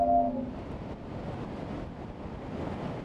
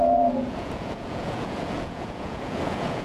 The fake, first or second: second